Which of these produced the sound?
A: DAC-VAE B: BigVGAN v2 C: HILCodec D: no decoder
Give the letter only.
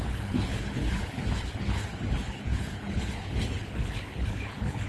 C